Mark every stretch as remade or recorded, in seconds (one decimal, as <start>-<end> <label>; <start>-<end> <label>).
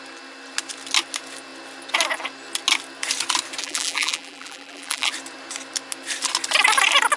0.0-3.6 recorded; 3.6-5.1 remade; 5.1-7.2 recorded